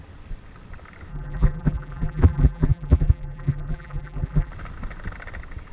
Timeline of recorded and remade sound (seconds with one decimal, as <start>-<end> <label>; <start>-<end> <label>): 0.0-1.1 recorded; 1.1-4.5 remade; 4.5-5.7 recorded